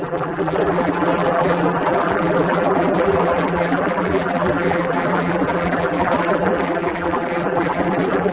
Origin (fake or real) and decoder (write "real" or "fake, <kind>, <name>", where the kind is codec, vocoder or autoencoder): fake, vocoder, BigVGAN v2